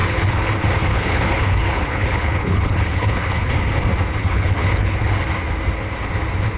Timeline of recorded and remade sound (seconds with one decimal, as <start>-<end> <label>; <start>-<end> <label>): 0.0-0.5 remade; 0.5-0.9 recorded; 0.9-3.5 remade; 3.5-4.2 recorded; 4.2-5.2 remade; 5.2-6.6 recorded